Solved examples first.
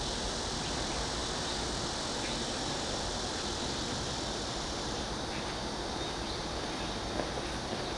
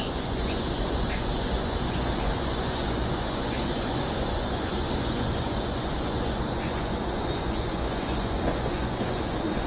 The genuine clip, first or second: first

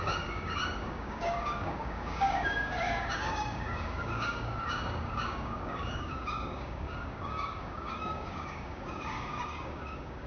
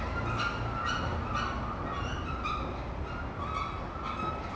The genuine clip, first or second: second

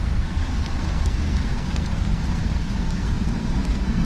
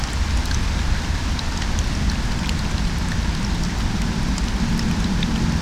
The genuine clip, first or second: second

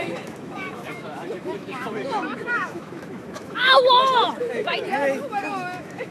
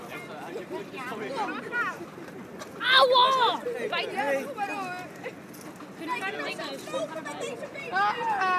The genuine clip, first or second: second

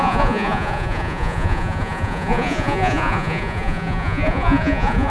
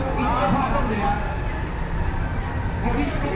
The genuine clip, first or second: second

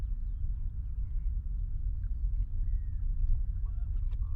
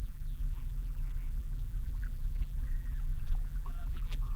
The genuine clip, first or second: first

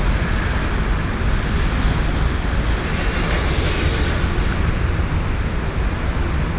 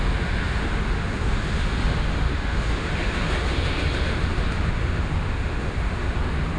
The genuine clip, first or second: first